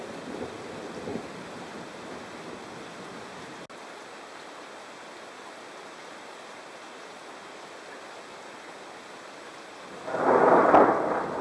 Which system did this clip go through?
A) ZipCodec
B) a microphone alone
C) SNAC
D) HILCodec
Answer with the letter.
B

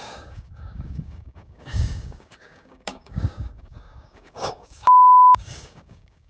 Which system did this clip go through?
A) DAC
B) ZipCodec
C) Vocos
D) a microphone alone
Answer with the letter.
A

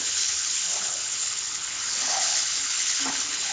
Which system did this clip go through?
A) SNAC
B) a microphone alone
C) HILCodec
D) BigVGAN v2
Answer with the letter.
C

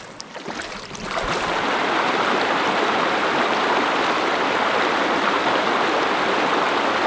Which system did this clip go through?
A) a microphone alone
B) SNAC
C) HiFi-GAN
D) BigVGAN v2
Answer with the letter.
A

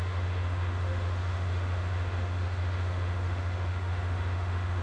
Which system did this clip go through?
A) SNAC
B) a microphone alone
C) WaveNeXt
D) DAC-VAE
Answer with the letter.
D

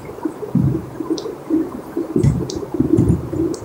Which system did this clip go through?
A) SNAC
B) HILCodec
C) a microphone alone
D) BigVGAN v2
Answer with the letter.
D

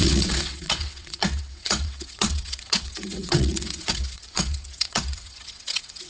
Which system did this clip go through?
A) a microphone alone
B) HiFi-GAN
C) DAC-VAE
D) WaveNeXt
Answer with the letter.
D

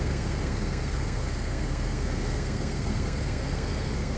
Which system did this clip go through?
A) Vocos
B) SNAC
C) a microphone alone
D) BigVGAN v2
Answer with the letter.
B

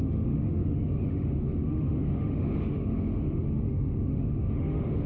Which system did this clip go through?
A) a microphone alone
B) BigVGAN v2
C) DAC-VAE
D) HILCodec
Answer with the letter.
C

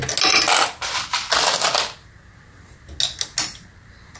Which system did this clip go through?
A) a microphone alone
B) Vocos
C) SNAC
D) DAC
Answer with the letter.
A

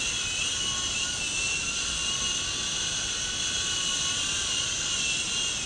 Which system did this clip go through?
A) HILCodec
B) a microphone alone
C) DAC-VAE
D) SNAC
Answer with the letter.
B